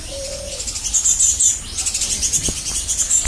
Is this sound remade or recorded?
recorded